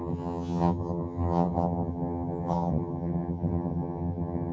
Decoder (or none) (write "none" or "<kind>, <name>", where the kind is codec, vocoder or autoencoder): vocoder, HiFi-GAN